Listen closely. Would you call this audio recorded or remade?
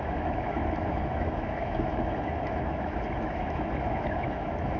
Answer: remade